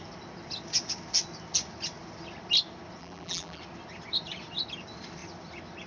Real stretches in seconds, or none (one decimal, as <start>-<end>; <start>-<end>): 0.0-3.0; 3.6-5.9